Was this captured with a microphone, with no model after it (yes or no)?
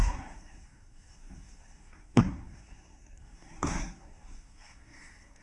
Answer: no